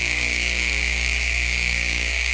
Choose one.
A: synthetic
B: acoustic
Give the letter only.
A